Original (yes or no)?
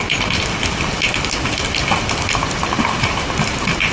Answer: yes